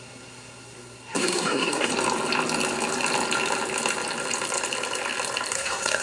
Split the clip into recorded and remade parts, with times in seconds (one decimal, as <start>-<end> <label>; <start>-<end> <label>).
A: 0.0-1.9 remade; 1.9-5.5 recorded; 5.5-6.0 remade